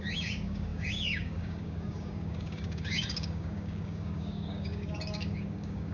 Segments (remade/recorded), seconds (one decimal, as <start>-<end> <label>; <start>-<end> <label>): 0.0-5.9 remade